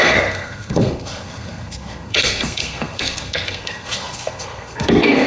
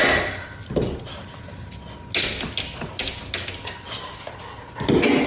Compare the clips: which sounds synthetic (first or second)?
first